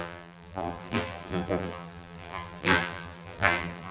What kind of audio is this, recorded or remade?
remade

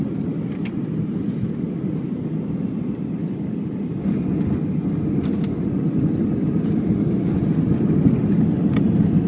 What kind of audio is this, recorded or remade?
recorded